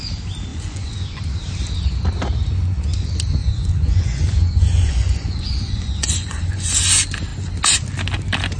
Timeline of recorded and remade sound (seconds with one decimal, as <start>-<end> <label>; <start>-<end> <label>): 0.0-0.5 recorded; 0.5-1.2 remade; 1.2-3.4 recorded; 3.4-6.7 remade; 6.7-8.6 recorded